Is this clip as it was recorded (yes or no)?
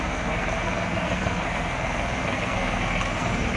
no